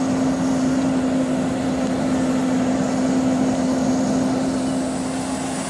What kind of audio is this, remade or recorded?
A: recorded